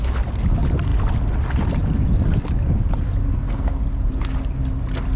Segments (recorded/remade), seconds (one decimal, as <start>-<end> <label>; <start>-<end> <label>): 0.0-3.2 recorded; 3.2-3.8 remade; 3.8-5.2 recorded